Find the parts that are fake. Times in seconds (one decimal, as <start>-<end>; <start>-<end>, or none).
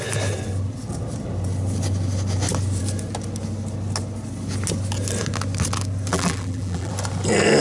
6.1-6.9